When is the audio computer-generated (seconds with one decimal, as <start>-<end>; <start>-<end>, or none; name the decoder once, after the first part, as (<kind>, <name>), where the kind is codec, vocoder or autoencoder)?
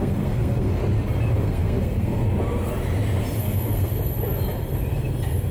0.0-0.8 (codec, SNAC); 1.4-2.2; 3.4-3.9